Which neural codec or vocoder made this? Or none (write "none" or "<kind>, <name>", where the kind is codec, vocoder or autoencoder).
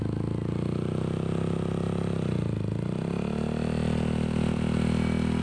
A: none